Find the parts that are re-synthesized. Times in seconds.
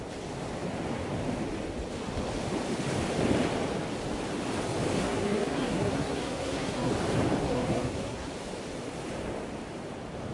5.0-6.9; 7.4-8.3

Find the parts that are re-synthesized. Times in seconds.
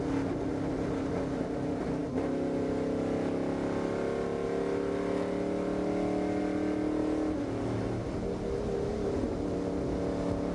none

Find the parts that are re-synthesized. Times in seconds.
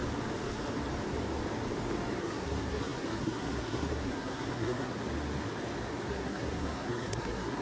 2.2-4.9; 6.1-7.6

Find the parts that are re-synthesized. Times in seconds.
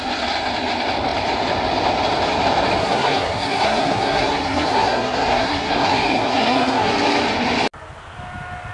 2.8-6.9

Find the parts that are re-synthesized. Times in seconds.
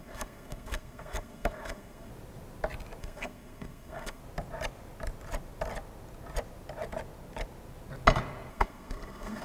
0.0-2.1; 3.0-4.2; 8.5-9.4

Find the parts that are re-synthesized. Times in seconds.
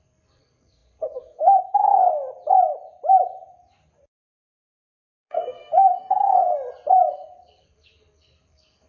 0.0-2.0; 4.5-6.5; 7.1-8.9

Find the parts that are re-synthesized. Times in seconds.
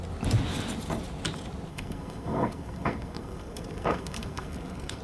1.7-5.0